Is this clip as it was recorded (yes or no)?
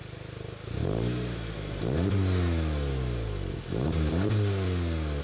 yes